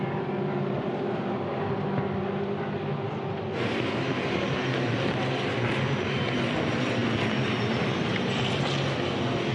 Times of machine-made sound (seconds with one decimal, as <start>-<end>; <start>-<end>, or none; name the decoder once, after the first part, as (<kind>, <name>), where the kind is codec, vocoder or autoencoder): none